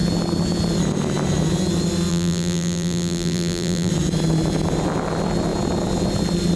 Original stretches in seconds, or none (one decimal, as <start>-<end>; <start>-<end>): 0.0-2.1; 3.9-6.6